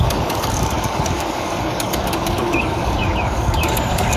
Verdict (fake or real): fake